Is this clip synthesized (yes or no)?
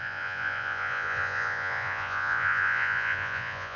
yes